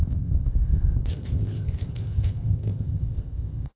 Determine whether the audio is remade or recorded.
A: remade